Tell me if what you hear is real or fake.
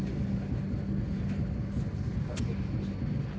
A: real